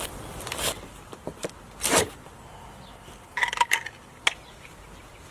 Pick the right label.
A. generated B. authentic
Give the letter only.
A